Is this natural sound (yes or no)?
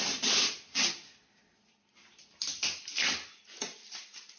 yes